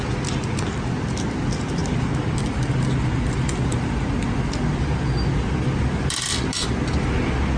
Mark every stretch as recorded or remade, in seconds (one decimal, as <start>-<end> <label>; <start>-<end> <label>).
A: 0.0-7.6 recorded